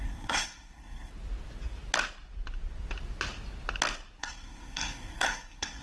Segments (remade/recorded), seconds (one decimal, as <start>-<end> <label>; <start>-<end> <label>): 0.0-1.1 remade; 1.1-4.2 recorded; 4.2-5.8 remade